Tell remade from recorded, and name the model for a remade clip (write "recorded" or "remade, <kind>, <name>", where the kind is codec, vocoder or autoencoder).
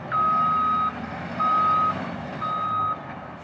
recorded